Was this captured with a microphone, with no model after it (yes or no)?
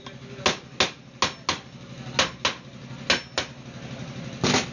yes